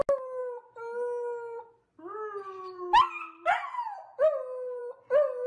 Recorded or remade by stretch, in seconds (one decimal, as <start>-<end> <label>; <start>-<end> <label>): 0.0-5.5 recorded

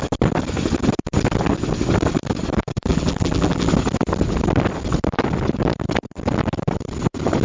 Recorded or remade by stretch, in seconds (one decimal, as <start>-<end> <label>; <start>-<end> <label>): 0.0-2.9 recorded; 2.9-3.7 remade; 3.7-7.4 recorded

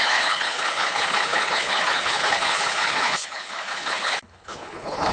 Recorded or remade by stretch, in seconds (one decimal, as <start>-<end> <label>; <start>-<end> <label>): 0.0-5.1 remade

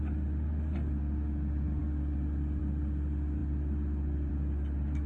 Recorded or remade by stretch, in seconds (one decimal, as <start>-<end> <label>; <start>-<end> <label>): 0.0-5.1 recorded

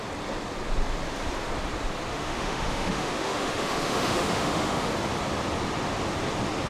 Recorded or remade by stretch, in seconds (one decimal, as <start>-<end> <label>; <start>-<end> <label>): 0.0-2.1 recorded; 2.1-4.9 remade; 4.9-6.7 recorded